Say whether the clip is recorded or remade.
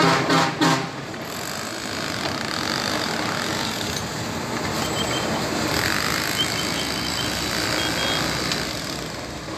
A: recorded